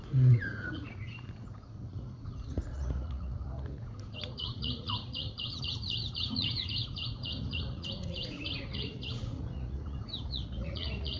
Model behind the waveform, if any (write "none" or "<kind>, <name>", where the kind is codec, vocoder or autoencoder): vocoder, Vocos